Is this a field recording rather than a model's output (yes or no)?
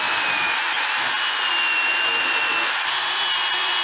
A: yes